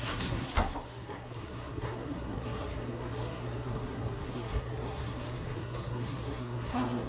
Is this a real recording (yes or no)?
no